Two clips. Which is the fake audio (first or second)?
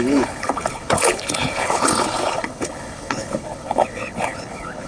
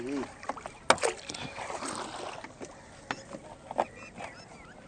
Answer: first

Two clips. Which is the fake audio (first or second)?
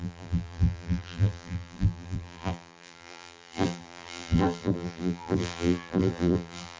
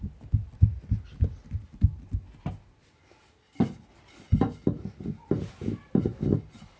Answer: first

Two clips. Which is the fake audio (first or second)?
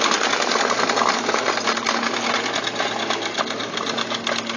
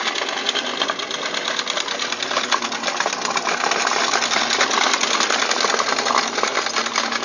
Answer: second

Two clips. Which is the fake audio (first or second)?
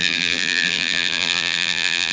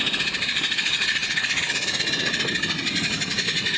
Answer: first